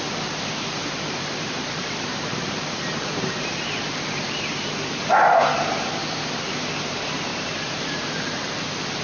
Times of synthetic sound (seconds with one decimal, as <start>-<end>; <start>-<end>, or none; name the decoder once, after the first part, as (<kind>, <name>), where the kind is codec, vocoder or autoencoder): 0.8-4.3 (vocoder, BigVGAN v2); 7.3-8.6

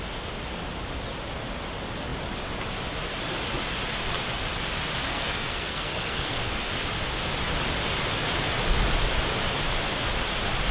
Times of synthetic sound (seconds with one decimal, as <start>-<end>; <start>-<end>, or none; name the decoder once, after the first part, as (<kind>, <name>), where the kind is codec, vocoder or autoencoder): 5.1-6.7 (codec, SNAC)

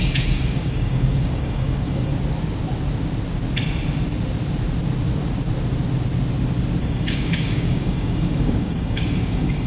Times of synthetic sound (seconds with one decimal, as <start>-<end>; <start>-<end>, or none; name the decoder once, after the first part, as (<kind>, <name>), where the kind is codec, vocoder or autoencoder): 0.0-2.1 (codec, DAC); 6.8-9.7

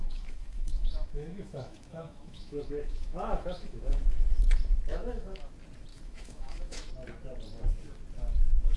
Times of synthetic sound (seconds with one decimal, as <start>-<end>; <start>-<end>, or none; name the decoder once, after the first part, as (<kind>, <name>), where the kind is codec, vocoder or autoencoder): 0.0-4.0 (autoencoder, DAC-VAE); 4.9-5.5; 5.9-6.9

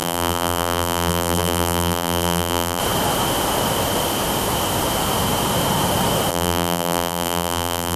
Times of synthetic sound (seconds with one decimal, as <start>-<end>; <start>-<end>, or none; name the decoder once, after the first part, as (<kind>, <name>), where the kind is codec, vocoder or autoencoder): 0.0-2.8 (vocoder, BigVGAN v2); 6.3-8.0

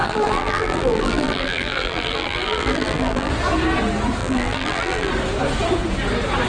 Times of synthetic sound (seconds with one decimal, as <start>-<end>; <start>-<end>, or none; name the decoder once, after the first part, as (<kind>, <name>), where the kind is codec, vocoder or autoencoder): 0.0-3.3 (vocoder, BigVGAN v2); 4.2-5.1